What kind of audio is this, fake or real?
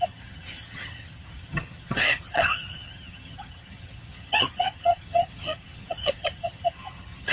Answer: fake